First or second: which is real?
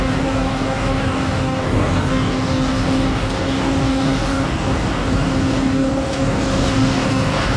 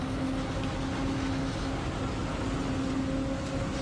second